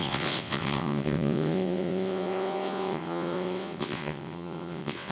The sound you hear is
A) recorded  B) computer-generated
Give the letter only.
B